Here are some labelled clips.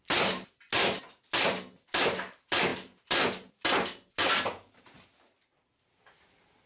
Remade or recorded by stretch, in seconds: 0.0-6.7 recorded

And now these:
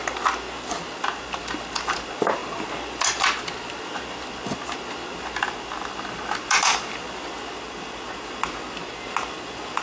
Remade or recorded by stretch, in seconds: 0.0-9.8 recorded

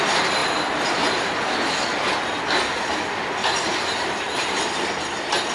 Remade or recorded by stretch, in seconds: 0.0-0.4 recorded; 0.4-1.7 remade; 1.7-3.4 recorded; 3.4-4.6 remade; 4.6-5.5 recorded

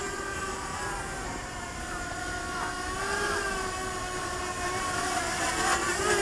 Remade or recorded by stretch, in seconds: 0.0-2.4 remade; 2.4-4.2 recorded; 4.2-5.2 remade; 5.2-6.2 recorded

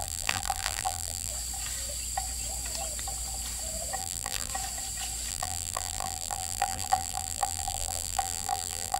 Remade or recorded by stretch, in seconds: 0.0-1.3 remade; 1.3-4.0 recorded; 4.0-4.5 remade; 4.5-5.3 recorded; 5.3-9.0 remade